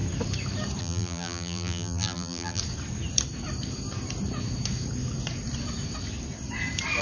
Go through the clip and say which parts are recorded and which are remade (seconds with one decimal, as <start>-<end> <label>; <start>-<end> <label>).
0.0-0.8 recorded; 0.8-2.6 remade; 2.6-7.0 recorded